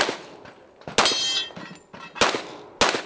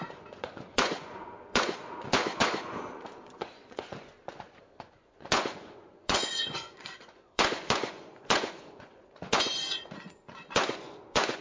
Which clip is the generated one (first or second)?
second